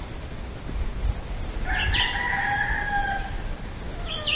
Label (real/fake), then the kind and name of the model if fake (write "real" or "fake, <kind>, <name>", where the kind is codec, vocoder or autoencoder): real